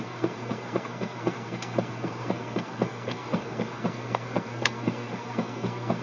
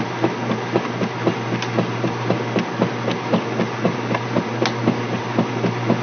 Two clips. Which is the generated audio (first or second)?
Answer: first